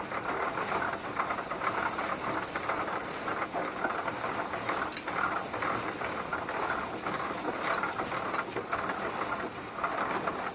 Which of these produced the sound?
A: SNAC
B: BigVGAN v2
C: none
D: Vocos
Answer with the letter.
C